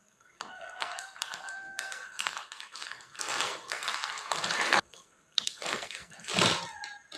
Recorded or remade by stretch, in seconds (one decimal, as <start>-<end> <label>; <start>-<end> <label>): 0.0-6.3 remade; 6.3-7.2 recorded